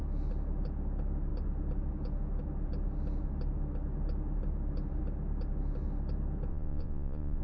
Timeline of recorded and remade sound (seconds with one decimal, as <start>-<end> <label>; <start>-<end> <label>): 0.0-6.5 recorded; 6.5-7.4 remade